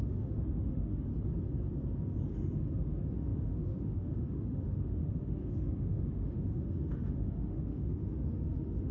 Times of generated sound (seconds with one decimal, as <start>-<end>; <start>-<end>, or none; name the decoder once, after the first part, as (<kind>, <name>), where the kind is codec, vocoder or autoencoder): 0.0-1.1 (autoencoder, DAC-VAE); 2.3-8.9